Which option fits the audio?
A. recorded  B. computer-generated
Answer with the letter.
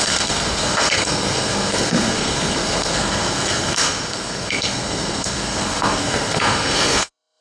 B